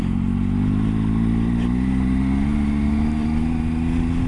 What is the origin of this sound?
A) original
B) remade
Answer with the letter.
A